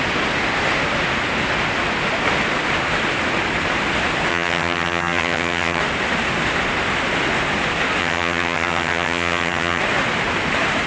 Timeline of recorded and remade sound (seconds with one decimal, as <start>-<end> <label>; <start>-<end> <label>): 0.0-4.3 recorded; 4.3-5.8 remade; 5.8-8.0 recorded; 8.0-9.8 remade; 9.8-10.9 recorded